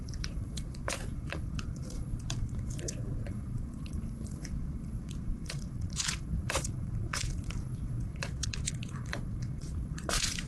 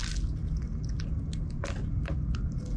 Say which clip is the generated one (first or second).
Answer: first